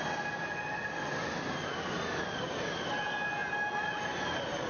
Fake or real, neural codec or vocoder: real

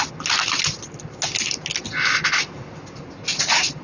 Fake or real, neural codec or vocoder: real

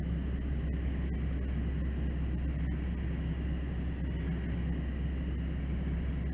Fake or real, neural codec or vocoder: real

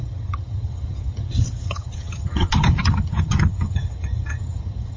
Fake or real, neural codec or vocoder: fake, vocoder, HiFi-GAN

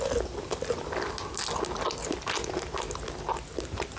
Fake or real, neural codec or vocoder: real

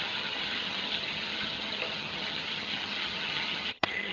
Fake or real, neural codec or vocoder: fake, vocoder, HiFi-GAN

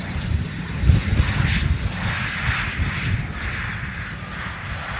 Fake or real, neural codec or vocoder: real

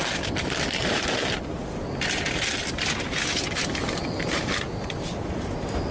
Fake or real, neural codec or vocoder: real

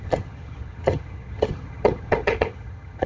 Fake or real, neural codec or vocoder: fake, vocoder, HiFi-GAN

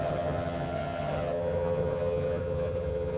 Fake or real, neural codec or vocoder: fake, vocoder, HiFi-GAN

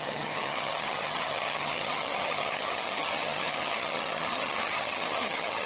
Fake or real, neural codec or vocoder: fake, vocoder, HiFi-GAN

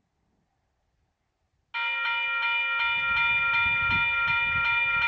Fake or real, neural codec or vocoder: real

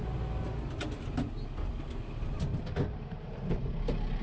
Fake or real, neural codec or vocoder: real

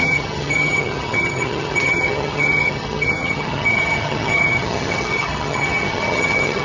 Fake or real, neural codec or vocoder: fake, vocoder, HiFi-GAN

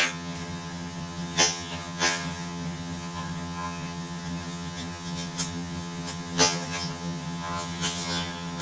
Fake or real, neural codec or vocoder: fake, vocoder, HiFi-GAN